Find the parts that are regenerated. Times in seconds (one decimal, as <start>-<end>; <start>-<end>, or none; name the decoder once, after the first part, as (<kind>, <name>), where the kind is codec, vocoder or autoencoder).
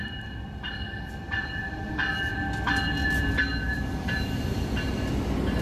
0.0-1.9 (vocoder, BigVGAN v2); 3.0-4.4